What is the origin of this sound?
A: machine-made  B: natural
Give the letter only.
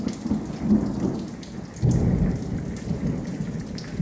B